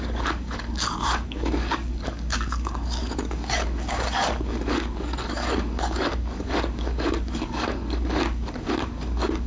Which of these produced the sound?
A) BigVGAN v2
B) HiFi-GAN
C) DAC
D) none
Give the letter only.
C